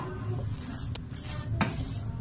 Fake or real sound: real